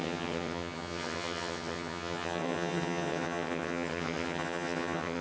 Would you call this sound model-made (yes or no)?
yes